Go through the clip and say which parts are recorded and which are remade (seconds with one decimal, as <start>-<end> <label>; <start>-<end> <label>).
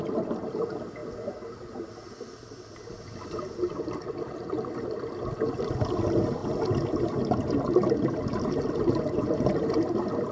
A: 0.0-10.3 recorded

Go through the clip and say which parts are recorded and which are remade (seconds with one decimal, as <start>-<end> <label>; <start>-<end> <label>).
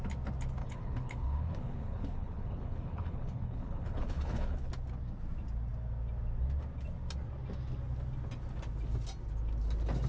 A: 0.0-0.6 recorded; 0.6-4.7 remade; 4.7-10.1 recorded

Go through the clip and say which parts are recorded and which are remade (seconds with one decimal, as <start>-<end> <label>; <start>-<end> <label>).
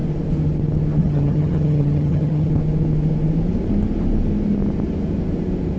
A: 0.0-1.0 recorded; 1.0-2.5 remade; 2.5-5.8 recorded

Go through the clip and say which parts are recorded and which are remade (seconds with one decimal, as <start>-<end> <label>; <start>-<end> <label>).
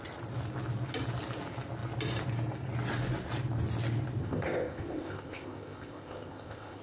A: 0.0-4.2 recorded; 4.2-6.8 remade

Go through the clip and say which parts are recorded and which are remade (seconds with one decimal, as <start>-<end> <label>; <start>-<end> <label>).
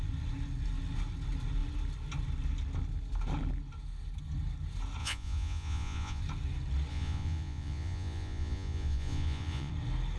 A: 0.0-5.0 recorded; 5.0-6.2 remade; 6.2-6.9 recorded; 6.9-9.7 remade; 9.7-10.2 recorded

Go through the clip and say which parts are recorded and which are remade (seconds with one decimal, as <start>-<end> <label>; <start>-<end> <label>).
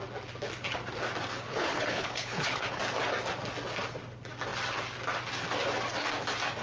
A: 0.0-1.5 recorded; 1.5-2.8 remade; 2.8-6.6 recorded